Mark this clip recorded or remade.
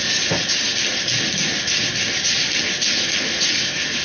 recorded